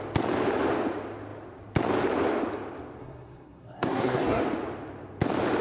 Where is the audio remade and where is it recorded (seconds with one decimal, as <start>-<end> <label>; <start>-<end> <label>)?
0.0-3.0 recorded; 3.0-4.4 remade; 4.4-5.6 recorded